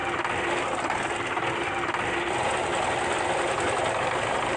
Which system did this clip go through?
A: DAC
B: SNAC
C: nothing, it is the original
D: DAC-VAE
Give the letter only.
C